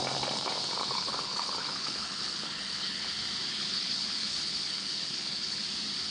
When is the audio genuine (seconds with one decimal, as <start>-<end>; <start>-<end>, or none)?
0.0-0.8; 3.1-3.5; 5.6-6.1